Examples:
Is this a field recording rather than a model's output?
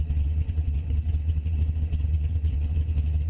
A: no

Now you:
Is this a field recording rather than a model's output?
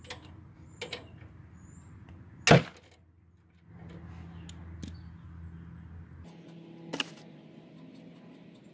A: yes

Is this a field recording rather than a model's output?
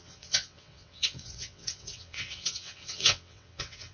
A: no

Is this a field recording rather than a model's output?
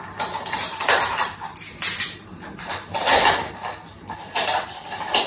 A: yes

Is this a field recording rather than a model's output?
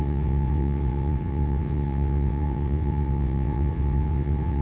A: no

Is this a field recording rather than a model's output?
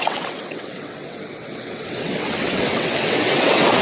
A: no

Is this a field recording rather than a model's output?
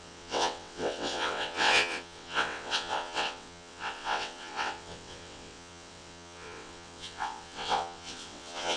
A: no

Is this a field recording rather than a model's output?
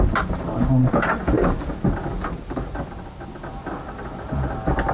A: yes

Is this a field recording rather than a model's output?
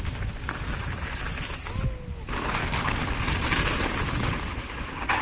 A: yes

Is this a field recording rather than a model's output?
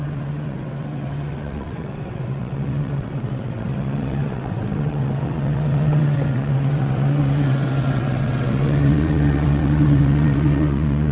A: no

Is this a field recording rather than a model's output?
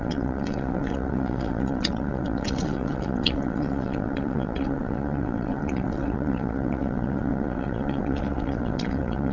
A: no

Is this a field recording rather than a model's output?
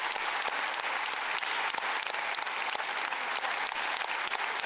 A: yes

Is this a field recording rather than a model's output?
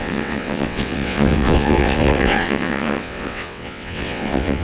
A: no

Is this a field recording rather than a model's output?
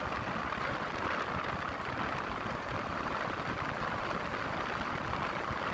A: yes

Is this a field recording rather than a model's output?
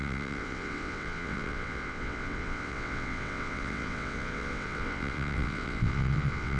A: no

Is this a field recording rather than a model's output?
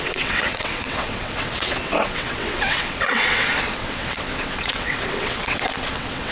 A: no